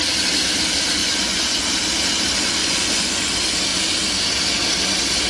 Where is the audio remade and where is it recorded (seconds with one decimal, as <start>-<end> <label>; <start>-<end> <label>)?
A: 0.0-1.0 recorded; 1.0-1.6 remade; 1.6-2.6 recorded; 2.6-3.3 remade; 3.3-5.3 recorded